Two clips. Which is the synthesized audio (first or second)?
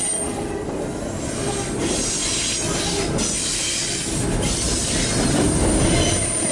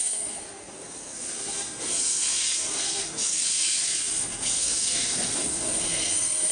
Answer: second